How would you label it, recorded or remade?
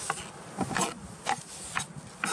recorded